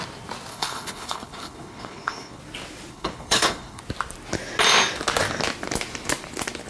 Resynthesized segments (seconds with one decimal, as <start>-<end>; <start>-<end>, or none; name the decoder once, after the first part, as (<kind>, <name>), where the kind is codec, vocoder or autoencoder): 0.5-2.4 (codec, HILCodec); 2.9-3.8